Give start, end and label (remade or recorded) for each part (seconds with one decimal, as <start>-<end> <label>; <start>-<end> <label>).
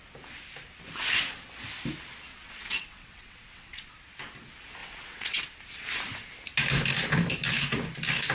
0.0-2.3 recorded; 2.3-3.9 remade; 3.9-4.8 recorded; 4.8-5.4 remade; 5.4-8.3 recorded